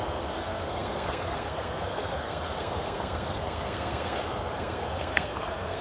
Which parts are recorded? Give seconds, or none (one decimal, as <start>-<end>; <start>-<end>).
none